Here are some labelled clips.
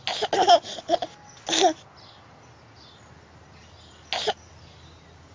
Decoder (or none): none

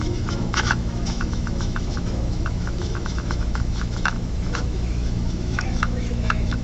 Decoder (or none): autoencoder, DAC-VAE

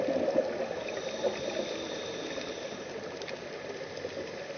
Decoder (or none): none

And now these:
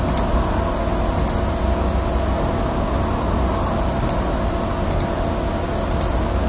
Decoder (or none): none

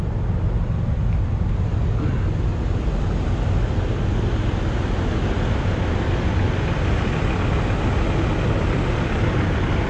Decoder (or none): none